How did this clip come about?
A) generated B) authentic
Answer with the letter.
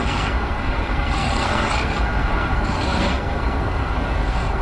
A